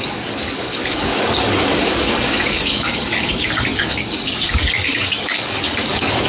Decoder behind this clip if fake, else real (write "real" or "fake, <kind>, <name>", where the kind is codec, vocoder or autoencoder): fake, codec, DAC